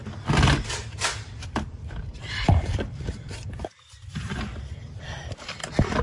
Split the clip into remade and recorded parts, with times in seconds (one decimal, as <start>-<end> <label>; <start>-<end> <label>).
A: 0.0-6.0 remade